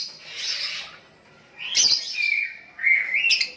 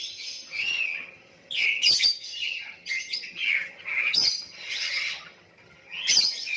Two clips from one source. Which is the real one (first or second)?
first